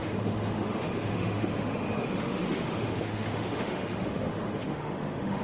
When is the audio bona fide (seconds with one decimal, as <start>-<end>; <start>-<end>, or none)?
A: none